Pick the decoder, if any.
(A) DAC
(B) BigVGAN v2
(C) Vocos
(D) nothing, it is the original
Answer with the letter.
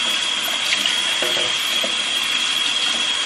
D